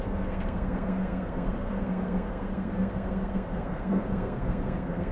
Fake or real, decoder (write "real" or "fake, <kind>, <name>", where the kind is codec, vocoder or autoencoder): fake, codec, SNAC